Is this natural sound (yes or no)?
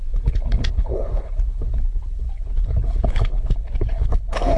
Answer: no